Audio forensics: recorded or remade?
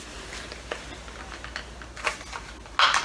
recorded